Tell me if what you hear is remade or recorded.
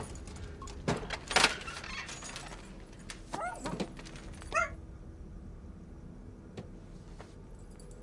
recorded